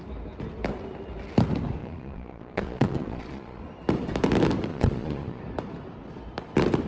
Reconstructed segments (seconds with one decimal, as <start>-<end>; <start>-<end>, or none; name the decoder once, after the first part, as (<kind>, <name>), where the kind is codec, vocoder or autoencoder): 1.8-3.6 (vocoder, Vocos); 4.7-5.4